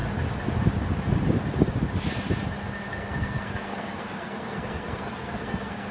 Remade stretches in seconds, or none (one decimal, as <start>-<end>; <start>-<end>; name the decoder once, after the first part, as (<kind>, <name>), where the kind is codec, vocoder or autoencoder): 2.9-5.9 (codec, SNAC)